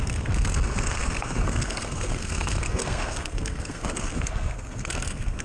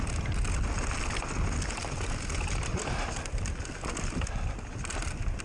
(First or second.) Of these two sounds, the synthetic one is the first